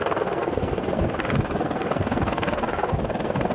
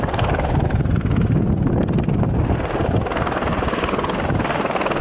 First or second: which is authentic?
second